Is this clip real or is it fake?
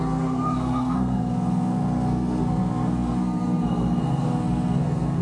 fake